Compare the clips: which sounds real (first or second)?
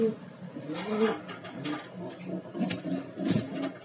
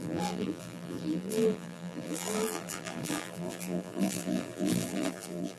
first